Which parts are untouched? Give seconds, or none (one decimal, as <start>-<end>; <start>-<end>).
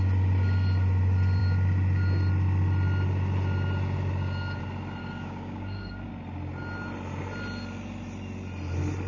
0.0-5.0; 6.1-9.1